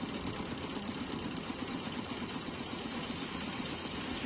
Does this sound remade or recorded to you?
recorded